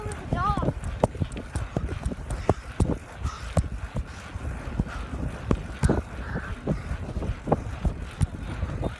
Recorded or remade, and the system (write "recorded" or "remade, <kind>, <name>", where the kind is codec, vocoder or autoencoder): recorded